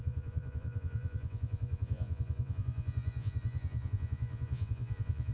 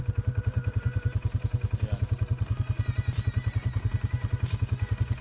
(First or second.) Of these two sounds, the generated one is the first